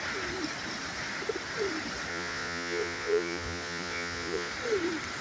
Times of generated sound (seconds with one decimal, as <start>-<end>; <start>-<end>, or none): 2.1-4.5